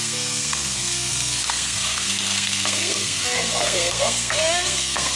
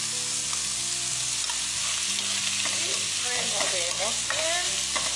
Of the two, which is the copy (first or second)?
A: first